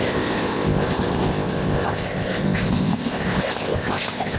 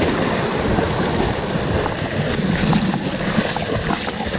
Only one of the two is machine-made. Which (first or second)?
first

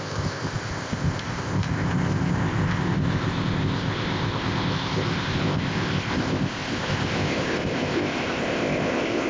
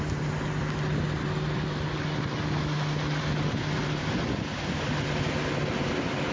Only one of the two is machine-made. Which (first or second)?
first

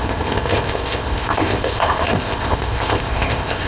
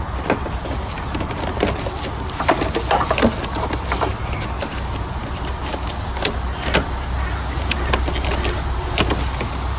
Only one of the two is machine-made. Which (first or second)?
first